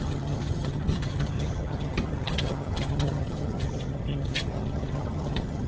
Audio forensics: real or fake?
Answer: fake